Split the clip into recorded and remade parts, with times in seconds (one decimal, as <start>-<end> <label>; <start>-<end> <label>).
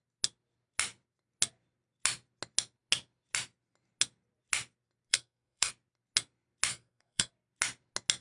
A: 0.0-5.1 recorded; 5.1-5.7 remade; 5.7-6.7 recorded; 6.7-7.3 remade; 7.3-8.2 recorded